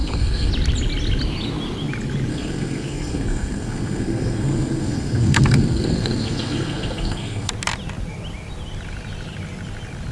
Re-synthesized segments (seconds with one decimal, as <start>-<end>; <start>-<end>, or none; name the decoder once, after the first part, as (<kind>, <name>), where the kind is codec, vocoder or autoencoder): 0.0-0.5 (codec, SNAC); 2.3-7.5